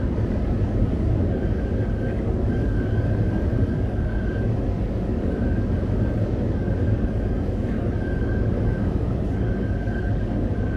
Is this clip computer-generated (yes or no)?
yes